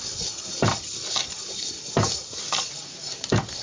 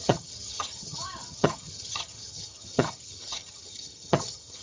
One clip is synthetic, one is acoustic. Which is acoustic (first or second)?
first